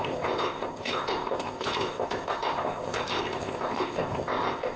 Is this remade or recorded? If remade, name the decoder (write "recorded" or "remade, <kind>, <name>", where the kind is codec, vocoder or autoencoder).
remade, codec, ZipCodec